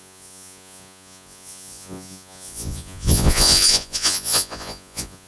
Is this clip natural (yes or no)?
no